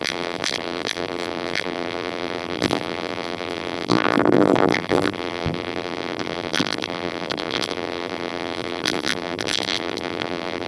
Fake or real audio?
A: fake